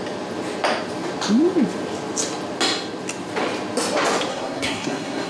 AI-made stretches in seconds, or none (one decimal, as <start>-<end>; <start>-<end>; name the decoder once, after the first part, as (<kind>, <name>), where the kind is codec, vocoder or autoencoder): 4.3-5.3 (codec, SNAC)